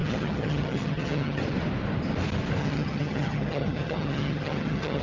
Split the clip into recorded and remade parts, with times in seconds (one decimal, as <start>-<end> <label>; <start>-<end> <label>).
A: 0.0-1.4 remade; 1.4-2.6 recorded; 2.6-5.0 remade